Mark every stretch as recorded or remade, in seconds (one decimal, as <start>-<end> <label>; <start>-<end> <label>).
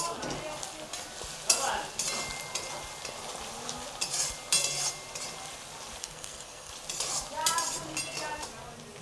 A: 0.0-6.0 recorded; 6.0-6.7 remade; 6.7-9.0 recorded